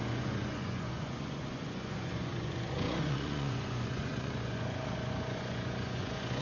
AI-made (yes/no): yes